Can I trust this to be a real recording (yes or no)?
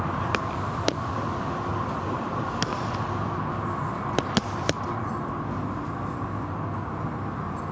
yes